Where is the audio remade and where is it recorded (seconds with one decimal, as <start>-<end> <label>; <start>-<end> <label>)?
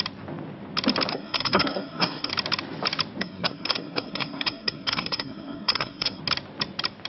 0.0-1.1 recorded; 1.1-2.3 remade; 2.3-3.2 recorded; 3.2-6.2 remade; 6.2-7.1 recorded